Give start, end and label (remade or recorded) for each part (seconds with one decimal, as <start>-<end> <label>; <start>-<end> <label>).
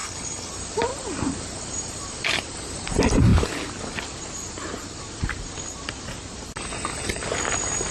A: 0.0-0.5 remade; 0.5-7.9 recorded